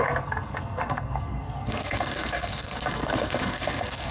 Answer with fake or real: fake